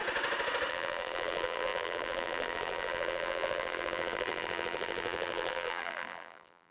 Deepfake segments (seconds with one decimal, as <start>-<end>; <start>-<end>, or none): 0.7-6.7